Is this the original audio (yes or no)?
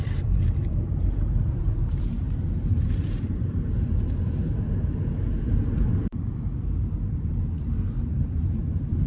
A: no